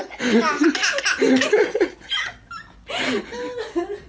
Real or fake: real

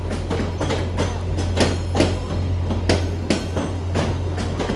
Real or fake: real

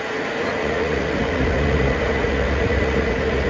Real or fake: fake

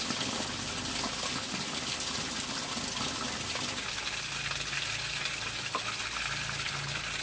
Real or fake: real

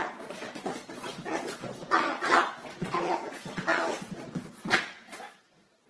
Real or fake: fake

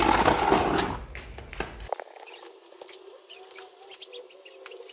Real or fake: real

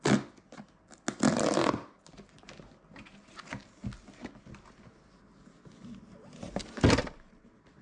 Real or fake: real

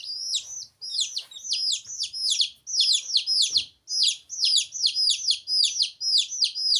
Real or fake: real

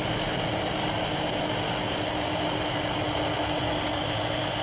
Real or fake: real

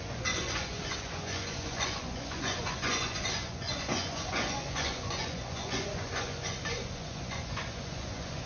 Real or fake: fake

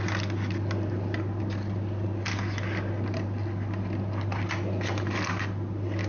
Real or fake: real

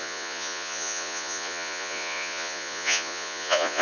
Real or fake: fake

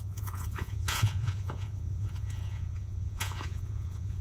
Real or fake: fake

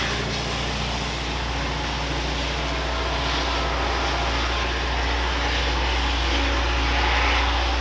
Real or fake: real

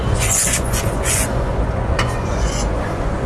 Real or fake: fake